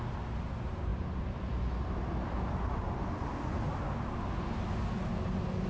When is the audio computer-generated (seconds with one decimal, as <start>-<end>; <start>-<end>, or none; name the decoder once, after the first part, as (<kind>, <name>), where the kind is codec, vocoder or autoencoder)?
none